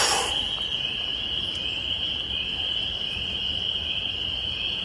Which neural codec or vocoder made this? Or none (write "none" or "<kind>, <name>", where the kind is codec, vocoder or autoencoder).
none